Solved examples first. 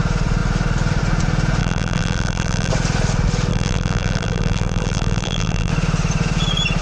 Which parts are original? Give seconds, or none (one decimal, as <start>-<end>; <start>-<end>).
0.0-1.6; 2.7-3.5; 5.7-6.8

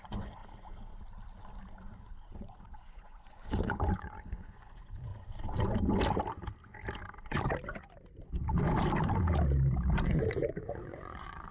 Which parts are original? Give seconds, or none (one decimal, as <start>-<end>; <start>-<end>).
0.4-2.3; 5.1-9.9

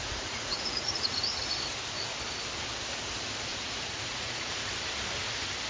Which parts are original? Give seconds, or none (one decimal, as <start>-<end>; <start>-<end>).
1.2-3.5; 4.7-5.7